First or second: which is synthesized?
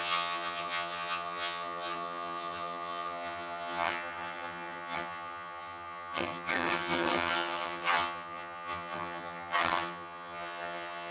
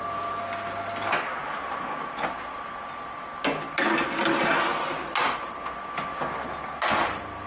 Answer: first